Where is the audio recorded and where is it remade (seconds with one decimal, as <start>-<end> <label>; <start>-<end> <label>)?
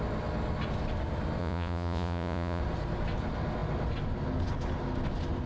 0.0-1.4 recorded; 1.4-2.6 remade; 2.6-5.5 recorded